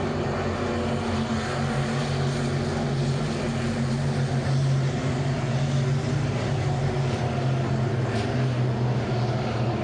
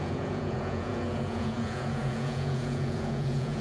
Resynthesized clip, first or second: second